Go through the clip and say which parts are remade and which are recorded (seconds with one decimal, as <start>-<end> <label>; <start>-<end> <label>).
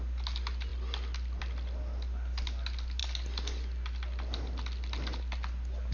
0.0-5.9 recorded